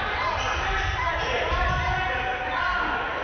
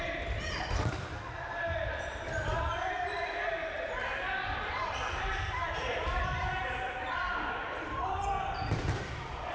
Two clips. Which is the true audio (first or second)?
first